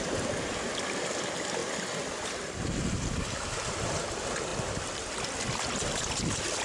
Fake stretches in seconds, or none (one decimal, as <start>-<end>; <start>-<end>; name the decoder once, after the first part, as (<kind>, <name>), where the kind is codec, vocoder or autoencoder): 1.6-2.5 (vocoder, BigVGAN v2); 4.5-6.6

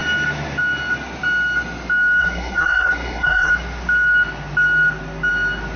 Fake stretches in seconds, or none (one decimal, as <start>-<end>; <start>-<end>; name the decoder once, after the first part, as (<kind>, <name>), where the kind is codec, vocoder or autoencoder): 2.2-3.5 (codec, SNAC)